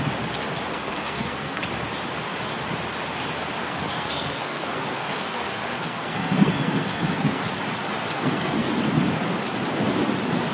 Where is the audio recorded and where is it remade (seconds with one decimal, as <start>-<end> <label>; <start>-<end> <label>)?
0.0-0.7 recorded; 0.7-1.6 remade; 1.6-3.6 recorded; 3.6-7.4 remade; 7.4-8.1 recorded; 8.1-8.7 remade; 8.7-10.5 recorded